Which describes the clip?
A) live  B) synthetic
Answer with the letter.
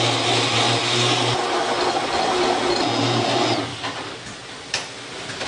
A